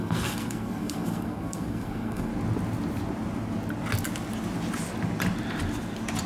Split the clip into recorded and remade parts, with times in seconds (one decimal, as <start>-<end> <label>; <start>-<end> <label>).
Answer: 0.0-2.3 remade; 2.3-6.3 recorded